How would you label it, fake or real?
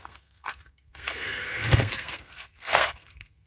fake